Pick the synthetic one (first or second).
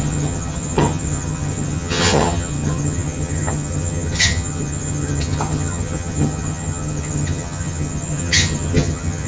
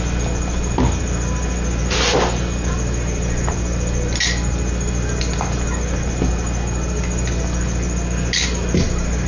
first